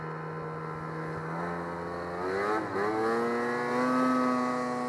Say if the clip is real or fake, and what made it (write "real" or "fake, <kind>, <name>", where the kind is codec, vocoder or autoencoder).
real